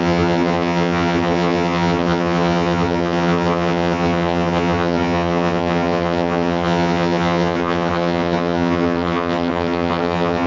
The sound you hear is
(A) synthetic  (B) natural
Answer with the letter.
A